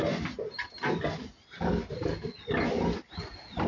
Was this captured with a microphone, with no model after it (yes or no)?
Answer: yes